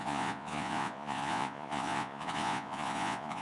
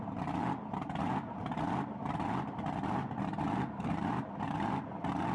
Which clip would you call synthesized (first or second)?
first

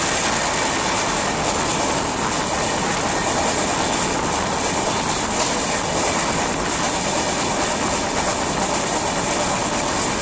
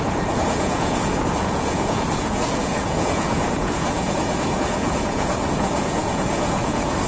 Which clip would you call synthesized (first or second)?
second